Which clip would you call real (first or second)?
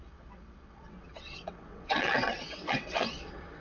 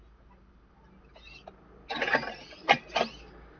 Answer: second